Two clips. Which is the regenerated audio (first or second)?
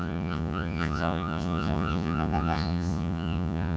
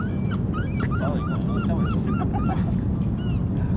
first